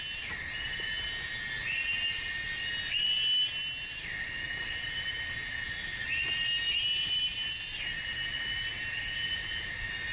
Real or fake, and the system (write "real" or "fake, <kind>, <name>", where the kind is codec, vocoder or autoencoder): real